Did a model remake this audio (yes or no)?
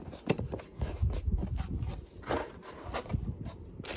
no